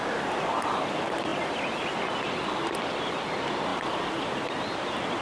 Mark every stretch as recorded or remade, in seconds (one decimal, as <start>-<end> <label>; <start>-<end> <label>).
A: 0.0-3.7 recorded; 3.7-4.5 remade; 4.5-5.2 recorded